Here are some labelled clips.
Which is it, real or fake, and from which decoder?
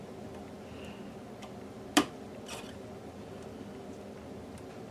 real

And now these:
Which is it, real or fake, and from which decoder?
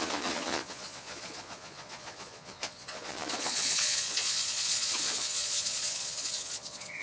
fake, vocoder, Vocos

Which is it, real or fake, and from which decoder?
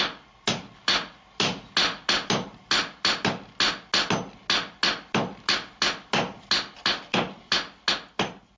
real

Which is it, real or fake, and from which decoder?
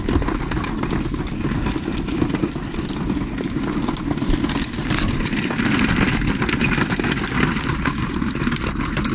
real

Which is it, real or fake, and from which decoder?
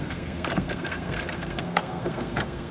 fake, codec, SNAC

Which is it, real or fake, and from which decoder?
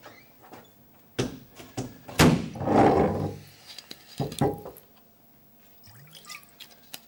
real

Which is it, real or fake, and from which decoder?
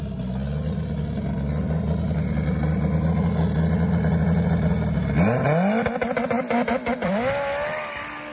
real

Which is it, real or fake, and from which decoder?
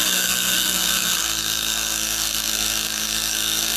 fake, codec, SNAC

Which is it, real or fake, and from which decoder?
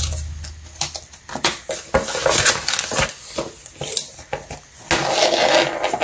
real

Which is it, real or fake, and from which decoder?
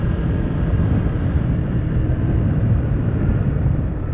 fake, vocoder, BigVGAN v2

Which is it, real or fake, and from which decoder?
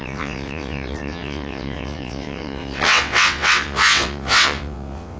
fake, vocoder, WaveNeXt